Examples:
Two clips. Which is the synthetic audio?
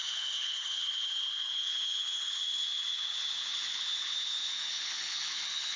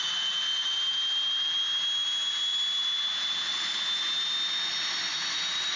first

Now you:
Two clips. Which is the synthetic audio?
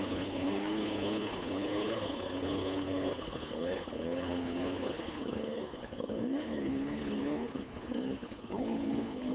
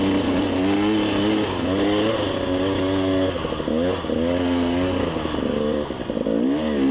first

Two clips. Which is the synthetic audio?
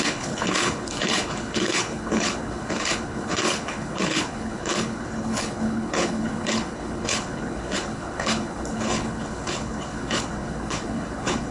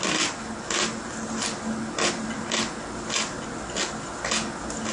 first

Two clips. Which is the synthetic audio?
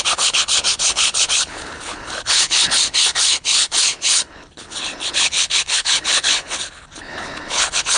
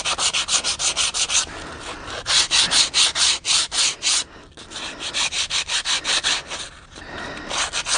first